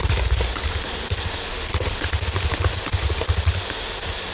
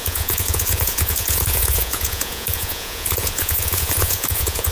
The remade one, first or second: second